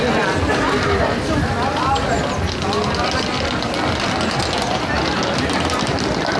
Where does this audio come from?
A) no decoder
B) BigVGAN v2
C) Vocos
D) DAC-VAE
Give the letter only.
A